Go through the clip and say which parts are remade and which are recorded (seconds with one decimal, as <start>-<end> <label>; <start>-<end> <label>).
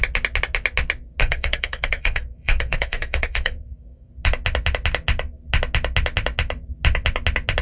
0.0-1.2 recorded; 1.2-4.1 remade; 4.1-7.6 recorded